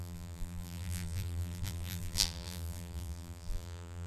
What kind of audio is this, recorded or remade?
remade